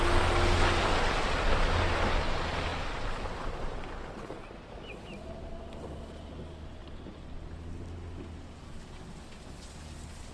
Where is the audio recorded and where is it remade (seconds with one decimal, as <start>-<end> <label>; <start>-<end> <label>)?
0.0-6.8 recorded; 6.8-7.3 remade; 7.3-10.3 recorded